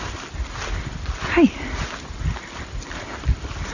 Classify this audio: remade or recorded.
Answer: recorded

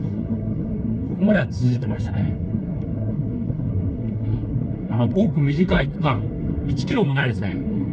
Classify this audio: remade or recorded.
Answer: remade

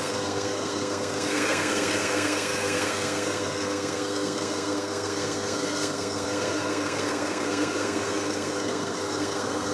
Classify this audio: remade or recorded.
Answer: remade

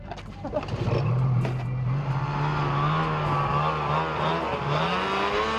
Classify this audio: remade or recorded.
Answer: recorded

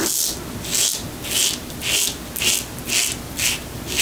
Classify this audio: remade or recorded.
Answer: recorded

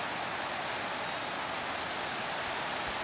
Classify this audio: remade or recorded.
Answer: recorded